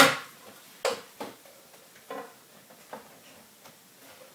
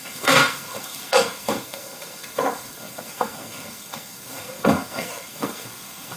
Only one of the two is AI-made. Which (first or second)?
second